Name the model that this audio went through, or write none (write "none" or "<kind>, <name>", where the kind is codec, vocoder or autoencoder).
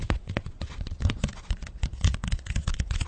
vocoder, Vocos